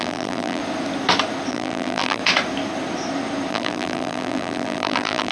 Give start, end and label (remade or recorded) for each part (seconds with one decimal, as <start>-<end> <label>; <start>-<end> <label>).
0.0-0.6 remade; 0.6-1.5 recorded; 1.5-2.2 remade; 2.2-3.5 recorded; 3.5-5.3 remade